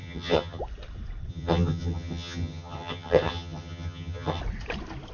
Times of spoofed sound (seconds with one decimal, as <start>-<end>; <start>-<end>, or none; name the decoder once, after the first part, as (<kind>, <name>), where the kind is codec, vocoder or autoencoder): 0.0-0.6 (vocoder, HiFi-GAN); 1.3-4.4